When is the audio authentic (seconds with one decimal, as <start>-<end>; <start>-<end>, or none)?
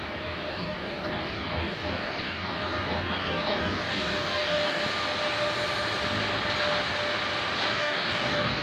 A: 4.8-7.7